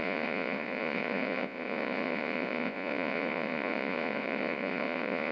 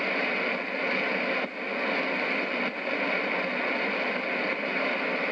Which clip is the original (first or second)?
second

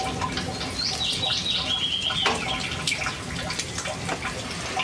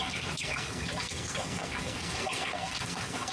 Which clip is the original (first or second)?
first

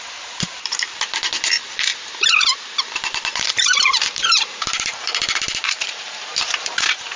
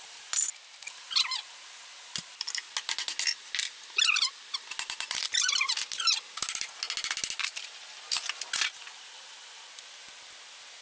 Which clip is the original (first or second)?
second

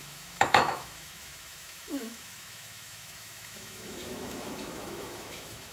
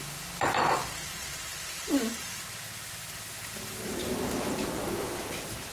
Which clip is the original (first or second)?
second